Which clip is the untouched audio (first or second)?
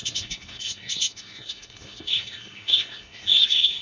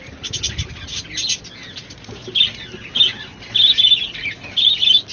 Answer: second